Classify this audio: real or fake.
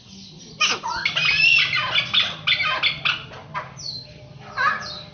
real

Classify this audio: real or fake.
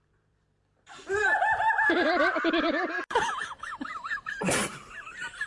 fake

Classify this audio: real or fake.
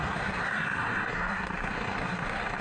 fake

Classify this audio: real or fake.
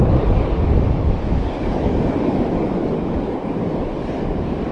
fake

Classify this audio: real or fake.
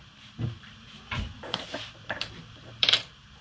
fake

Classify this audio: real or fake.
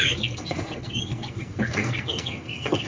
fake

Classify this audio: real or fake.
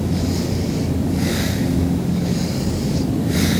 fake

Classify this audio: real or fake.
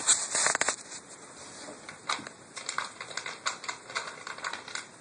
real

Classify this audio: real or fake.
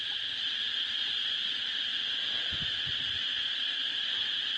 real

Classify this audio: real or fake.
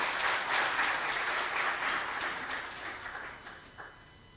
real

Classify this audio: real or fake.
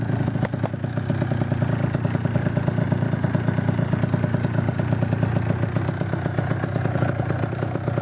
real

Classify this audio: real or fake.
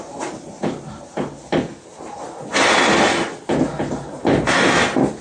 real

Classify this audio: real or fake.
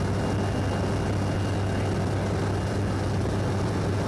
real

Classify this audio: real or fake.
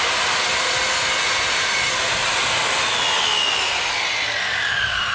real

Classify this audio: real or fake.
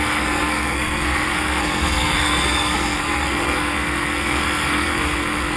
fake